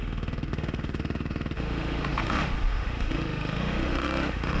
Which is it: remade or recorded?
remade